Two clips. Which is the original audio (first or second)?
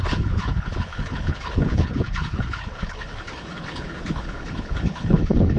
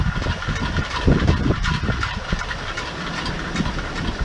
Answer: second